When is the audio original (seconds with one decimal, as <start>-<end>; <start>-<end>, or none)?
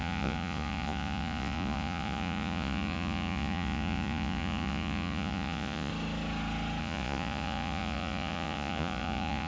5.9-6.8